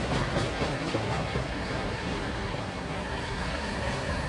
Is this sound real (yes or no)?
no